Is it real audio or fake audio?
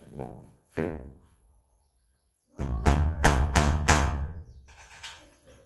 fake